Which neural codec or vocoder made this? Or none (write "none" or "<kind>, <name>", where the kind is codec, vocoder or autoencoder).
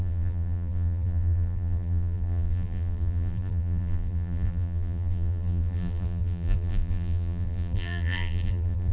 vocoder, BigVGAN v2